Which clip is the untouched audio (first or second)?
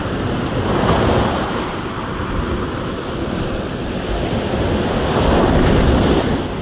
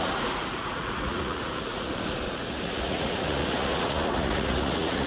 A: first